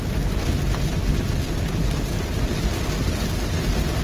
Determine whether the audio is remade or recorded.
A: recorded